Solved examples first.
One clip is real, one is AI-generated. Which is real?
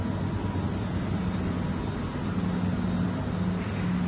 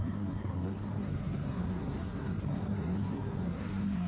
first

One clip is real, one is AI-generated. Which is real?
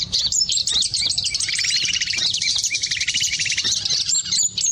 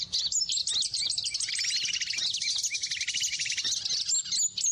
second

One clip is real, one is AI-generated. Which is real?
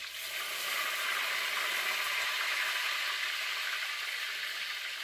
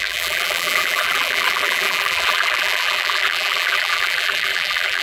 first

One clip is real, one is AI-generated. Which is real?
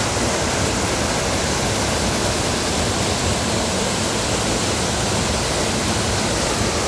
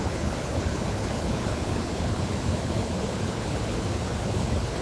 first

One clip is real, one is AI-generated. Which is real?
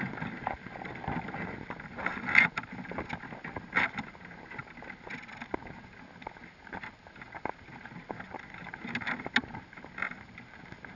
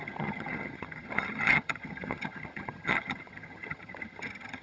first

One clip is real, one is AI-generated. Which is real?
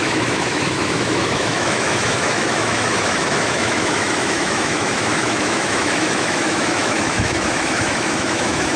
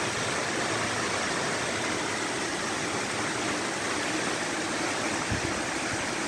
second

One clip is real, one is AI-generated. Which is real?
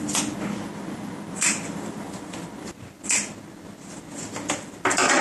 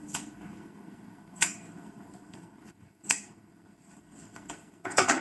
first